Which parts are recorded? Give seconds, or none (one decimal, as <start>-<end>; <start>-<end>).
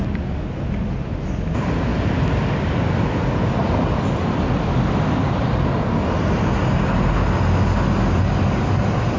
0.0-9.2